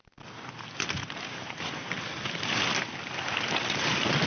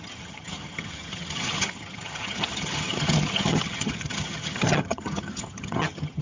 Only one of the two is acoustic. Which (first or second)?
first